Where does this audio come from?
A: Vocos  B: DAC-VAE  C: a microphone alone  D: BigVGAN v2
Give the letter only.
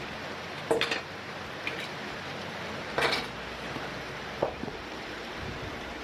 D